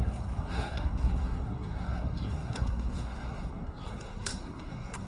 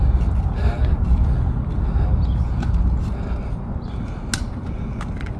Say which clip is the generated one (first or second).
first